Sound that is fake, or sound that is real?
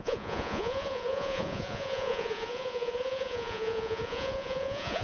fake